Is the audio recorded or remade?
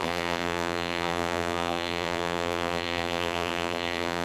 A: remade